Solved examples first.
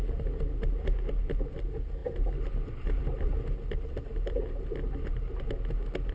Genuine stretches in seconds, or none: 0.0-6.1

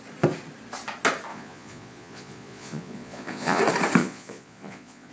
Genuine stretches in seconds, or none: 0.0-1.3; 3.6-4.0

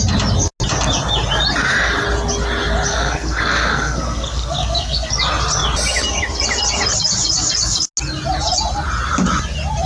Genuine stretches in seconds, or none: 0.0-2.9; 5.1-9.9

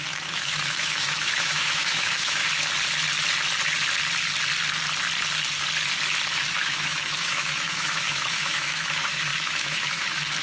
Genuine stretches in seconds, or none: 2.4-6.4

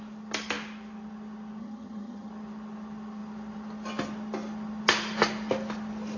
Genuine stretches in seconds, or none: 0.0-1.6; 2.3-6.2

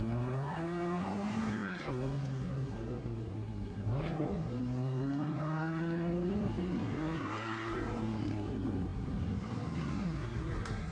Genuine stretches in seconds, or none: none

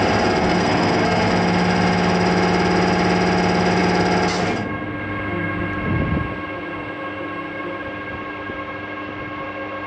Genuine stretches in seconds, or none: 0.0-0.4; 1.3-9.9

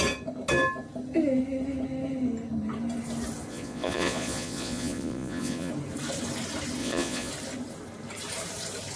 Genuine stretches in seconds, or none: 0.0-3.5; 5.7-6.8; 7.3-9.0